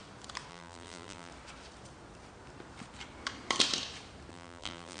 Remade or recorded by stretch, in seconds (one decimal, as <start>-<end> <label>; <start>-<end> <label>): 0.0-0.5 recorded; 0.5-1.3 remade; 1.3-4.3 recorded; 4.3-5.0 remade